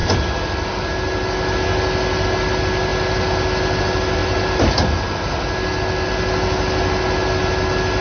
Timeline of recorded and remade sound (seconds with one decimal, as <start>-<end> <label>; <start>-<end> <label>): 0.0-0.7 remade; 0.7-8.0 recorded